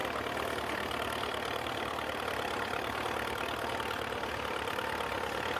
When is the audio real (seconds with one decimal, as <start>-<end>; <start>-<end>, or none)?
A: 0.0-5.6